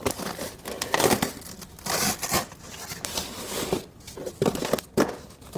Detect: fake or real fake